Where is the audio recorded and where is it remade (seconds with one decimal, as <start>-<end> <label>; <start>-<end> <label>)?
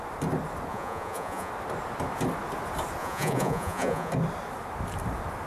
0.0-0.7 recorded; 0.7-1.5 remade; 1.5-3.0 recorded; 3.0-4.1 remade; 4.1-5.5 recorded